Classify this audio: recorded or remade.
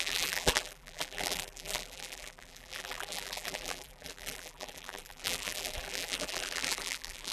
remade